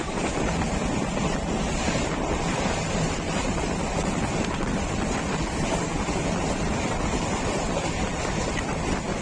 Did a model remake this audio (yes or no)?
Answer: no